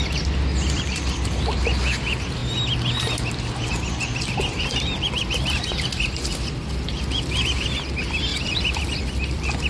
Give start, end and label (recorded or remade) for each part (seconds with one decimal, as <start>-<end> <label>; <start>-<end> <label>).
0.0-8.3 recorded; 8.3-8.8 remade; 8.8-9.7 recorded